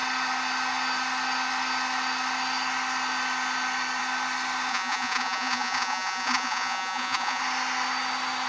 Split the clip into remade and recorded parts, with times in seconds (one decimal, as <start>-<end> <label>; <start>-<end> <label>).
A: 0.0-4.7 recorded; 4.7-7.4 remade; 7.4-8.5 recorded